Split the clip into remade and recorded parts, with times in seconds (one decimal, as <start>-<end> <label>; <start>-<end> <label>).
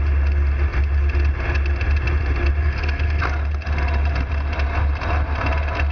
0.0-2.6 recorded; 2.6-3.2 remade; 3.2-5.9 recorded